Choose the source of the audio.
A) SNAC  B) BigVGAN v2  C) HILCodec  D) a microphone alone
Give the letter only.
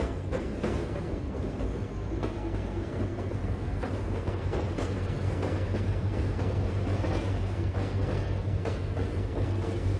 A